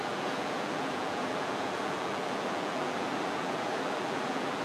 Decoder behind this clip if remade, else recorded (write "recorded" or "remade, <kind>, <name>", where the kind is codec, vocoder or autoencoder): remade, vocoder, BigVGAN v2